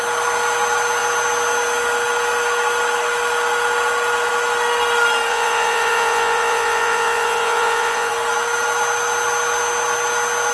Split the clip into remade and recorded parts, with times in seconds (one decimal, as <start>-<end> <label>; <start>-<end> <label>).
0.0-5.3 recorded; 5.3-8.1 remade; 8.1-10.5 recorded